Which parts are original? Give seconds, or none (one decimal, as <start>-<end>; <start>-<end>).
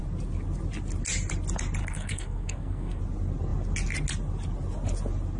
0.0-1.8; 3.0-5.4